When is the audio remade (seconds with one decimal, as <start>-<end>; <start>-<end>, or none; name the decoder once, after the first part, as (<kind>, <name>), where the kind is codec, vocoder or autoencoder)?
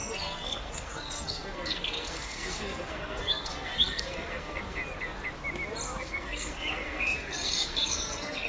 0.0-4.8 (codec, SNAC); 6.0-8.5